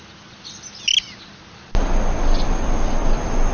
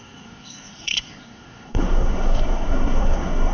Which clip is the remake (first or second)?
second